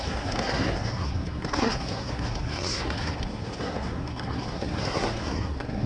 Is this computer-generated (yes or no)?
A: yes